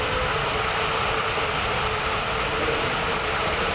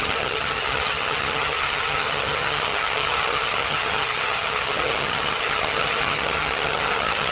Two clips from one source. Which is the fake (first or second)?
second